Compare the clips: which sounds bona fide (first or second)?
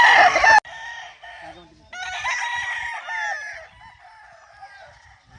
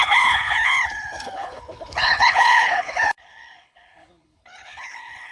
first